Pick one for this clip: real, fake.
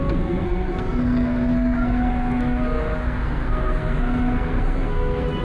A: fake